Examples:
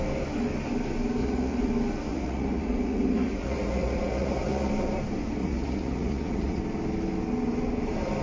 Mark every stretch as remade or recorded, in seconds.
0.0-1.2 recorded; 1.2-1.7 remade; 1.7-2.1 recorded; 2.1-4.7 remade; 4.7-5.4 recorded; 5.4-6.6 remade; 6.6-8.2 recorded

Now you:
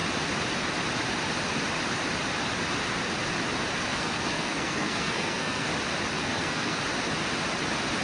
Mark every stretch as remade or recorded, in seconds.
0.0-3.9 recorded; 3.9-5.7 remade; 5.7-6.2 recorded; 6.2-6.8 remade; 6.8-8.0 recorded

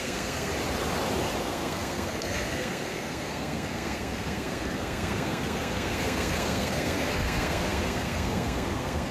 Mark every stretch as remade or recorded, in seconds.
0.0-0.5 remade; 0.5-1.4 recorded; 1.4-9.1 remade

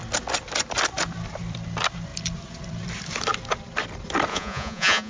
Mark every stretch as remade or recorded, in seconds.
0.0-4.3 recorded; 4.3-5.1 remade

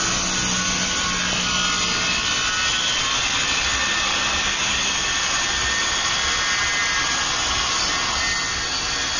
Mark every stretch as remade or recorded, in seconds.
0.0-9.2 recorded

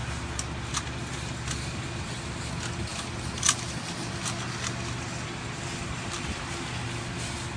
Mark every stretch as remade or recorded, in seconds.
0.0-7.6 recorded